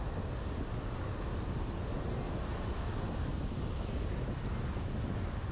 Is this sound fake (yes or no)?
no